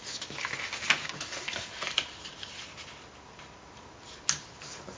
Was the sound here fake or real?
real